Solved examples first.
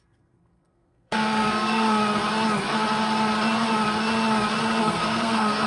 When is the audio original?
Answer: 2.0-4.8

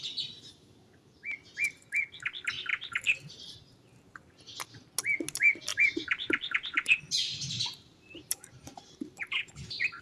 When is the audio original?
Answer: 0.0-2.7; 4.2-5.7